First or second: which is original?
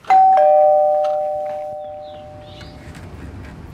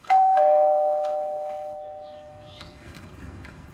first